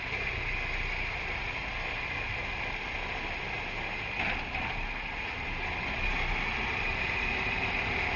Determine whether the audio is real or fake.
real